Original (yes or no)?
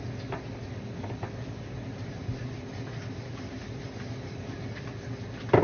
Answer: yes